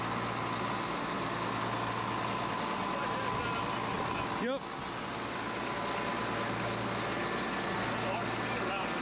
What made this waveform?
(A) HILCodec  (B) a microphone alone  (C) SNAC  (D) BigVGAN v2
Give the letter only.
B